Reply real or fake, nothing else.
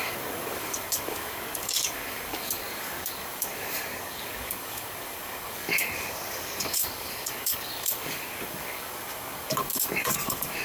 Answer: fake